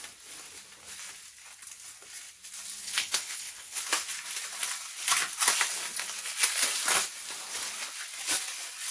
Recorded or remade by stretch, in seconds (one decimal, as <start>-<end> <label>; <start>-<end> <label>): 0.0-2.8 recorded; 2.8-3.8 remade; 3.8-8.9 recorded